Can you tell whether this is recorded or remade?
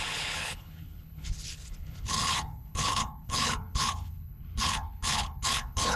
remade